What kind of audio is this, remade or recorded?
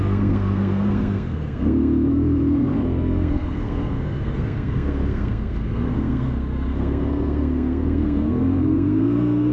remade